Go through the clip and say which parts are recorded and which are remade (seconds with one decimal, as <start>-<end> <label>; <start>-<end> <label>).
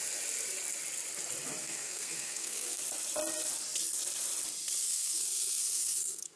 0.0-1.6 recorded; 1.6-2.8 remade; 2.8-4.8 recorded; 4.8-6.4 remade